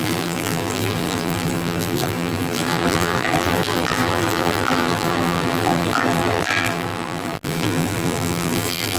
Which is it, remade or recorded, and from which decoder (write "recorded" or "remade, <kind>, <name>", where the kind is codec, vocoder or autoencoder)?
remade, vocoder, BigVGAN v2